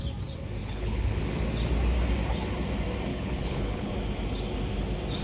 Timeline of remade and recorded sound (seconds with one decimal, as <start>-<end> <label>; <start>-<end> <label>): 0.0-0.6 recorded; 0.6-1.2 remade; 1.2-3.1 recorded; 3.1-3.9 remade; 3.9-5.2 recorded